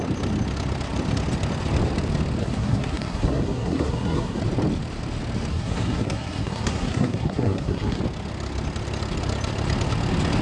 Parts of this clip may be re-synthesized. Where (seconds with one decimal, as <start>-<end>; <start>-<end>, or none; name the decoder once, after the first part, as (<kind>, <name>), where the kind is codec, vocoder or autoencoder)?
2.4-4.4 (codec, SNAC); 5.5-8.0